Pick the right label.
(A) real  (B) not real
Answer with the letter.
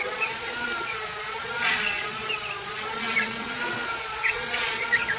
B